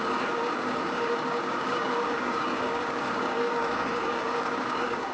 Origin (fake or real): fake